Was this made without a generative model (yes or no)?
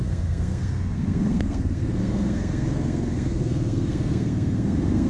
no